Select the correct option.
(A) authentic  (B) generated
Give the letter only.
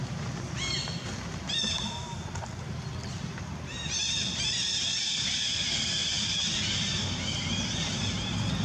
A